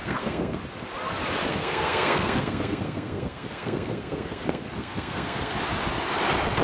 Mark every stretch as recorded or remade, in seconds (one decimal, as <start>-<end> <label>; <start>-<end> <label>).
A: 0.0-0.6 remade; 0.6-1.5 recorded; 1.5-5.5 remade; 5.5-6.6 recorded